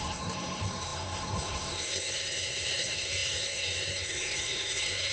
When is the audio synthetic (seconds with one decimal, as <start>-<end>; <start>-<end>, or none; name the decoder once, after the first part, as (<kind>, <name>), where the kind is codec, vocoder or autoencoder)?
0.0-5.1 (codec, SNAC)